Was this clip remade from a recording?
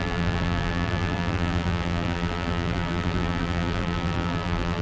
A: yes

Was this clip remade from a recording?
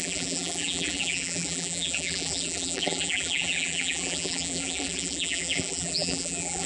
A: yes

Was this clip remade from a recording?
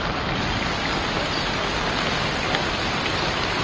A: yes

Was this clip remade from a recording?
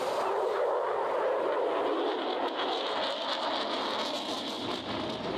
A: no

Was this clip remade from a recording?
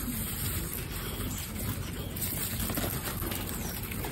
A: no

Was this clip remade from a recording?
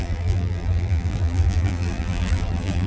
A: yes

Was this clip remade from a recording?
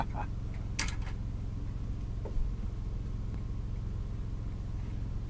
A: no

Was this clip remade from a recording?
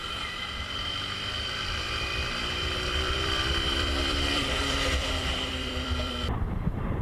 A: yes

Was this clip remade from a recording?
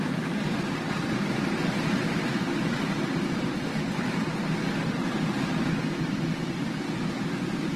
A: no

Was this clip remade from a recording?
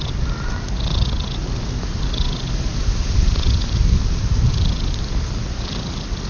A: no